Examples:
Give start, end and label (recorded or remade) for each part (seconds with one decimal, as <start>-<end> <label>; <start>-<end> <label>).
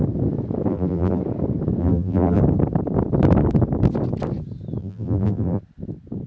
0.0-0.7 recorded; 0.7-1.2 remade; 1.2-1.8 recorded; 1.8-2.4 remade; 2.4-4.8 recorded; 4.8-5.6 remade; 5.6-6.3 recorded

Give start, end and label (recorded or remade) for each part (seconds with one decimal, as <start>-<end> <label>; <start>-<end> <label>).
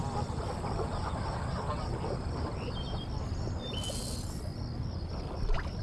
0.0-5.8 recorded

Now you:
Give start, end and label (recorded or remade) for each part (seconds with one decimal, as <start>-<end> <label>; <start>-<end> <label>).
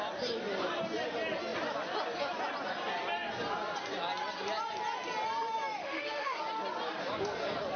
0.0-5.8 recorded; 5.8-6.4 remade; 6.4-7.8 recorded